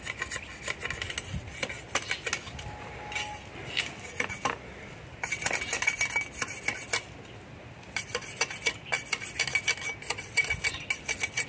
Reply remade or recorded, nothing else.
recorded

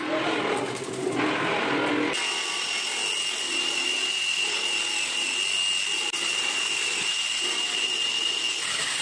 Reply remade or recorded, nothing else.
recorded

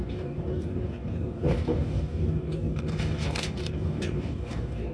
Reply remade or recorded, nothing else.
remade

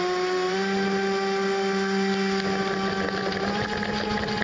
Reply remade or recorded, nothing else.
recorded